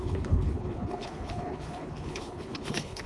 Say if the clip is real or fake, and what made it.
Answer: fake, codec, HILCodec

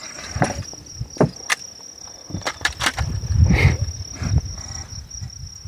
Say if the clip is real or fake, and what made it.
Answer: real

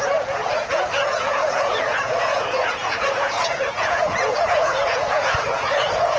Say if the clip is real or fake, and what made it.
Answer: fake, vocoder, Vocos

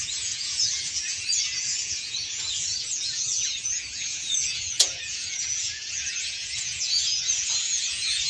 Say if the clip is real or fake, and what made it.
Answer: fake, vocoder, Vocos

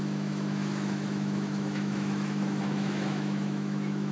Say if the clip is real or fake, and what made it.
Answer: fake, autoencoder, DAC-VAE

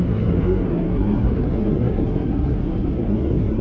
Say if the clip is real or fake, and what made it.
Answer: fake, codec, SNAC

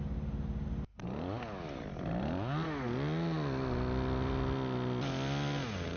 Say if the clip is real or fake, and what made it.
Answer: real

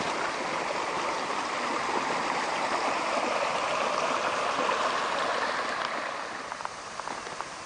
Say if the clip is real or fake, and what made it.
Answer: real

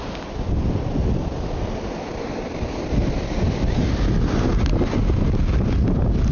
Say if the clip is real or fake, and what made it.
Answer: real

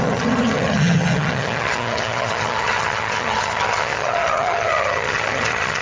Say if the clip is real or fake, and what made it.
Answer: fake, vocoder, HiFi-GAN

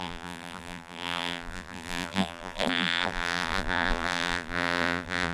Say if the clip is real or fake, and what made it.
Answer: fake, vocoder, BigVGAN v2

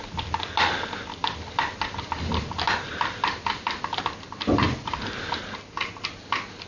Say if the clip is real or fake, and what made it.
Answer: real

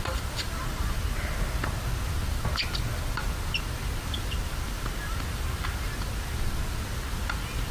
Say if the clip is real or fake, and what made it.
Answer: real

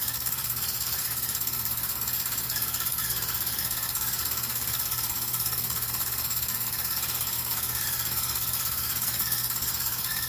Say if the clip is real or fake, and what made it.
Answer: fake, codec, SNAC